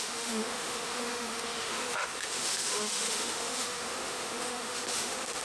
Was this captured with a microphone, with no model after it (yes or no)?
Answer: no